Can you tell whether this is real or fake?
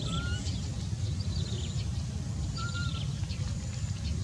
real